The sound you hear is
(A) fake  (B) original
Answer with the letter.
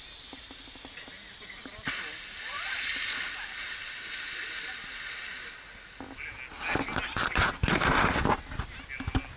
B